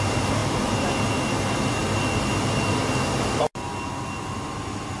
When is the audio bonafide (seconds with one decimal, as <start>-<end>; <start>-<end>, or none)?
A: 0.0-5.0